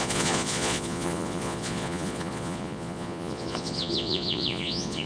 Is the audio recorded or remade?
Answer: remade